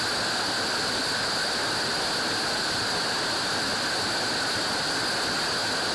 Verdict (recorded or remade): recorded